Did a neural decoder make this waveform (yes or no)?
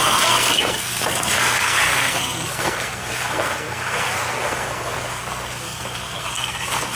yes